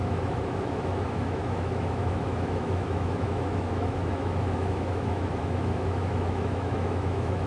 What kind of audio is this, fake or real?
fake